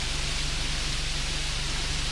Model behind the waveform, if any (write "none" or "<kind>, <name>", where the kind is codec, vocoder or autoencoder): none